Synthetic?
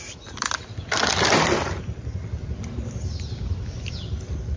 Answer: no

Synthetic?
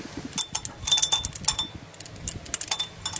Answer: no